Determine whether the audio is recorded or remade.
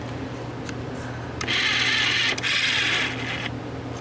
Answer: recorded